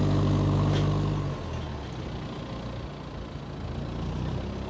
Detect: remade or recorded recorded